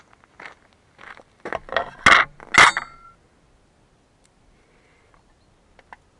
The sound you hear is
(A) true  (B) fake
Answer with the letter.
A